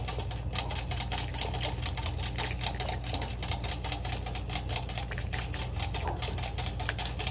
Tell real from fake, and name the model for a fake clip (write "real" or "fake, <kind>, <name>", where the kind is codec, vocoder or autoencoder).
real